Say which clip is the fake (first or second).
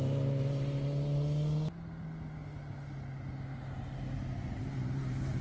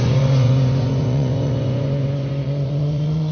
second